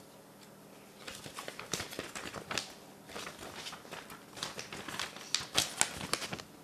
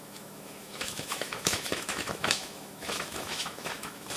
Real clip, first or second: first